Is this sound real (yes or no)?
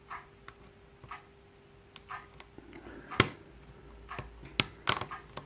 yes